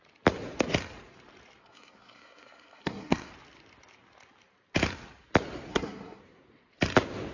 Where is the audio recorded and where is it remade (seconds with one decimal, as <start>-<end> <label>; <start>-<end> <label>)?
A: 0.0-1.6 recorded; 1.6-3.3 remade; 3.3-5.7 recorded; 5.7-6.2 remade; 6.2-7.3 recorded

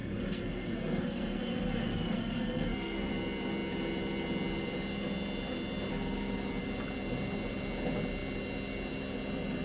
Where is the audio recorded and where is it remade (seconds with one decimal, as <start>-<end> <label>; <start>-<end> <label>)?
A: 0.0-3.1 remade; 3.1-9.6 recorded

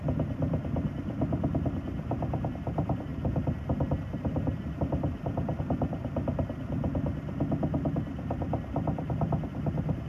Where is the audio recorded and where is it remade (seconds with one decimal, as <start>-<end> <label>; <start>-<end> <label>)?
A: 0.0-10.1 recorded

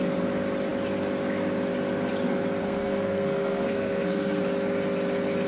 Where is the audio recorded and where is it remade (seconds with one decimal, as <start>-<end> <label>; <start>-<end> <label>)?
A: 0.0-2.6 recorded; 2.6-4.4 remade; 4.4-5.5 recorded

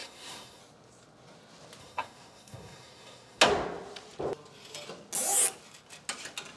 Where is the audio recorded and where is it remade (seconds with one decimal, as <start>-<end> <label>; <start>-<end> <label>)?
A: 0.0-0.6 remade; 0.6-1.8 recorded; 1.8-3.4 remade; 3.4-6.6 recorded